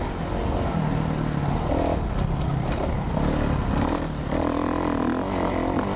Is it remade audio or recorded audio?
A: recorded